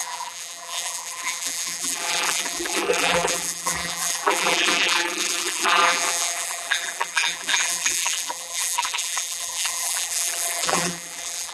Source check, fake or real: fake